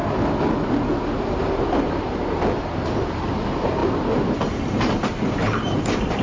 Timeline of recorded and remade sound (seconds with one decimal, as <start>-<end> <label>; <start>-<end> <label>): 0.0-6.2 recorded

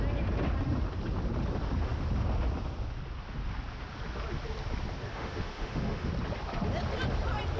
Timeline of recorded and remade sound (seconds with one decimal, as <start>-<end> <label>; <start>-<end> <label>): 0.0-5.1 recorded; 5.1-6.1 remade; 6.1-7.6 recorded

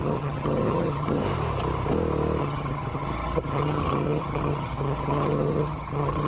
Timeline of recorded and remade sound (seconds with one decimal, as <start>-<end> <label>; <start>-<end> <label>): 0.0-1.2 remade; 1.2-2.4 recorded; 2.4-6.3 remade

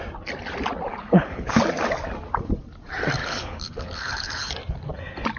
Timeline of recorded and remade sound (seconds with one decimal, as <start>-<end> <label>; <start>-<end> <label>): 0.0-1.0 recorded; 1.0-1.6 remade; 1.6-3.2 recorded; 3.2-4.5 remade; 4.5-5.4 recorded